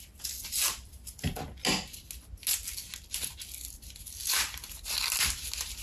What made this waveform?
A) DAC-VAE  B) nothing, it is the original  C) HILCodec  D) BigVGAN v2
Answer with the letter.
B